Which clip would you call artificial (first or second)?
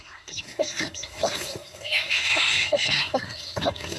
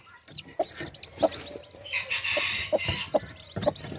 first